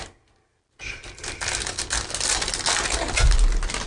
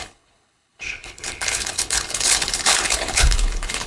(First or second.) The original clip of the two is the first